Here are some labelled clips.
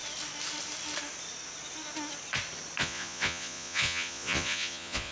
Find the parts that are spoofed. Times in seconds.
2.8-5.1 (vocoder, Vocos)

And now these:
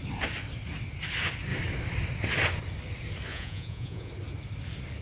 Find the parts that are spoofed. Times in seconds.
3.3-4.1 (vocoder, Vocos)

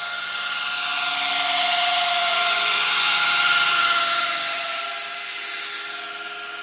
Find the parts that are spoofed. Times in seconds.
2.3-3.2 (vocoder, Vocos)

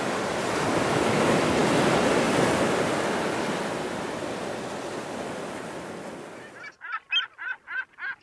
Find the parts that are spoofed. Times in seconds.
none

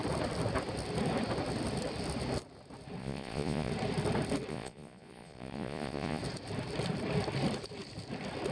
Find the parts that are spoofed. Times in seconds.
3.0-3.7 (vocoder, Vocos); 4.5-6.2

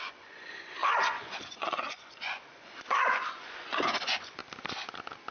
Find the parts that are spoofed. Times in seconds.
0.0-4.4 (vocoder, Vocos)